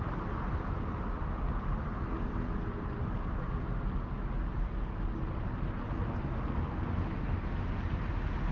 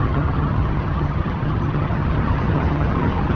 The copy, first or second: second